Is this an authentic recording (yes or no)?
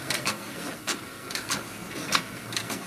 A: no